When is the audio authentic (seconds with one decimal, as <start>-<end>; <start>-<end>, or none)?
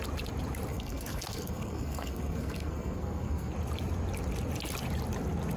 0.0-0.7; 3.5-5.6